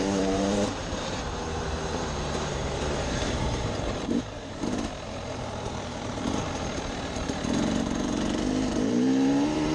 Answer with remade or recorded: remade